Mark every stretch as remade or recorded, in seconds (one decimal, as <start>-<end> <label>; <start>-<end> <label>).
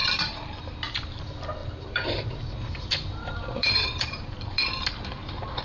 0.0-0.6 remade; 0.6-1.6 recorded; 1.6-4.7 remade; 4.7-5.6 recorded